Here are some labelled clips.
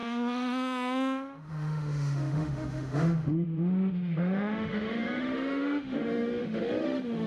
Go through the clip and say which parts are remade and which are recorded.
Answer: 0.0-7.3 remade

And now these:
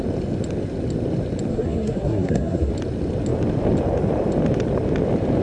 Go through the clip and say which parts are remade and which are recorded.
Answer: 0.0-1.5 recorded; 1.5-2.7 remade; 2.7-5.4 recorded

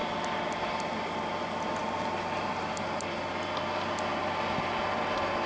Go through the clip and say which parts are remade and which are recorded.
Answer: 0.0-5.5 recorded